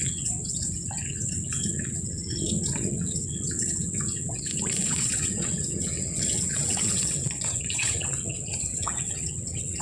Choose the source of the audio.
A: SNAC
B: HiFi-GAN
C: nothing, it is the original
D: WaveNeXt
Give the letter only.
D